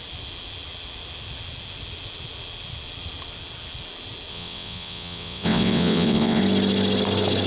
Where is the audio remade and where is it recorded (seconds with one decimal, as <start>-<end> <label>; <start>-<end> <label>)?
0.0-4.3 recorded; 4.3-6.4 remade; 6.4-7.5 recorded